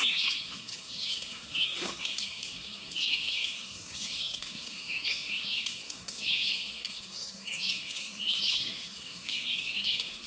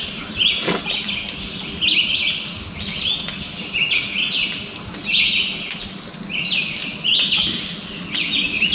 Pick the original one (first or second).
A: second